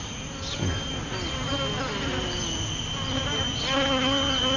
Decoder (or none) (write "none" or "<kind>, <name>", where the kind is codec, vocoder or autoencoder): none